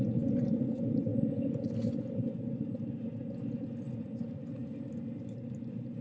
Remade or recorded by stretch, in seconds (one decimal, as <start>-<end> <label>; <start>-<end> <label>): 0.0-1.1 remade; 1.1-4.0 recorded; 4.0-4.6 remade; 4.6-5.2 recorded; 5.2-6.0 remade